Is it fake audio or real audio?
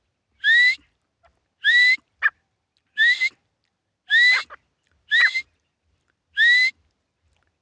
real